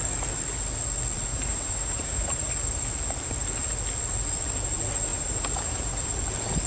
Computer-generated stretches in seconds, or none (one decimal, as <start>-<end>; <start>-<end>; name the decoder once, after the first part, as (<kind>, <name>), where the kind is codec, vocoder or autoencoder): 1.3-2.5 (vocoder, BigVGAN v2); 5.1-6.1